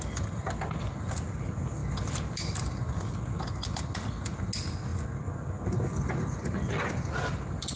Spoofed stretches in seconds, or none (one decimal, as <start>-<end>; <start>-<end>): none